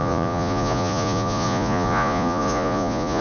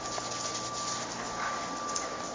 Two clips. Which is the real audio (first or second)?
second